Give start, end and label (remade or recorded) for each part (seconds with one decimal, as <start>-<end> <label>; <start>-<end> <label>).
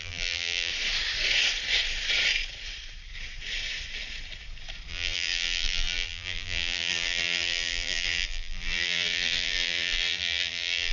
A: 0.0-0.7 remade; 0.7-4.9 recorded; 4.9-10.9 remade